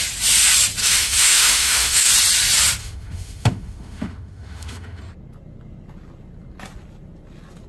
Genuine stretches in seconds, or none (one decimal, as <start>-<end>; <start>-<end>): 0.0-0.8; 2.1-2.8; 5.0-7.7